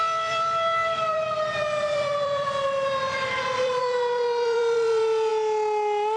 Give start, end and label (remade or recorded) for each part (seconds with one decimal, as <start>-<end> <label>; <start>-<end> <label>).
0.0-5.3 remade; 5.3-6.2 recorded